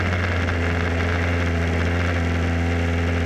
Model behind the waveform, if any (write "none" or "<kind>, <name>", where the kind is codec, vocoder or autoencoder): none